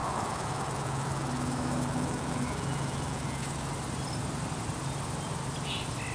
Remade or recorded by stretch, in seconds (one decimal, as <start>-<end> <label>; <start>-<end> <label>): 0.0-3.7 remade; 3.7-6.1 recorded